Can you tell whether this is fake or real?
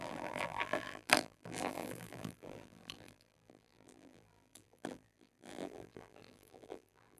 fake